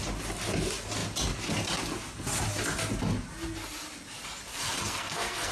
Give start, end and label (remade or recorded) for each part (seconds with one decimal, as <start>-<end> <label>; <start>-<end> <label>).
0.0-4.5 recorded; 4.5-5.5 remade